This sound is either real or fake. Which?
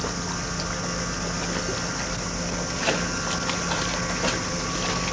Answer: real